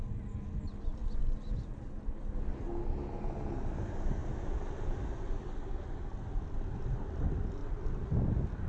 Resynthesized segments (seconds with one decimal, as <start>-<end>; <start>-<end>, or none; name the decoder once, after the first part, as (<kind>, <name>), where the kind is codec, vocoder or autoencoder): none